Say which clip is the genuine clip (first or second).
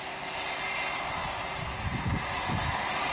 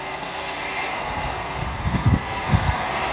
first